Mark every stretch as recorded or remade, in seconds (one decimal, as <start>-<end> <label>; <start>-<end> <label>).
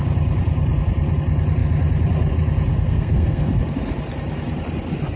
0.0-2.7 recorded; 2.7-3.5 remade; 3.5-5.2 recorded